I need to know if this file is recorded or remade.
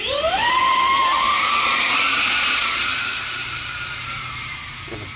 remade